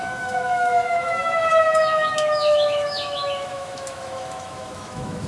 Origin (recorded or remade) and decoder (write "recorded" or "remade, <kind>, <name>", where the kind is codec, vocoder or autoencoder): remade, autoencoder, DAC-VAE